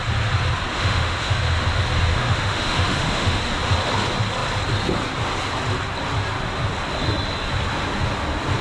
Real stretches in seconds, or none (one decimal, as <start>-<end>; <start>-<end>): 0.0-0.7; 1.3-2.1; 3.4-8.6